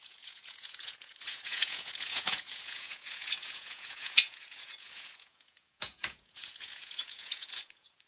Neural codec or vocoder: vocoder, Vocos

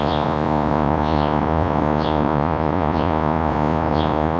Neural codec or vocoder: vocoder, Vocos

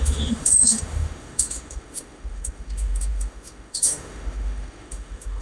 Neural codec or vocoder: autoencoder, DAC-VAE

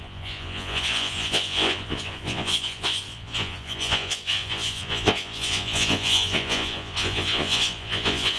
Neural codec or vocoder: vocoder, Vocos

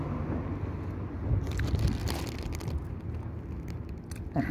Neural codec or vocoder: none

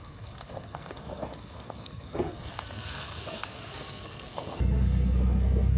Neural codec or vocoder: codec, SNAC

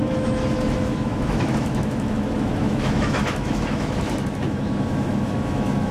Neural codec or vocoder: autoencoder, DAC-VAE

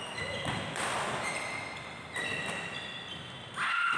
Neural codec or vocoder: none